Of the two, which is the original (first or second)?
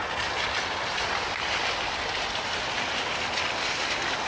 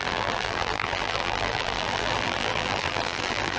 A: first